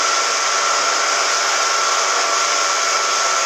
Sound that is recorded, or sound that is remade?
recorded